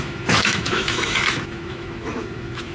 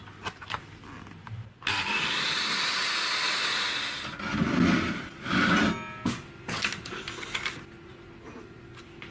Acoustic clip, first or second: second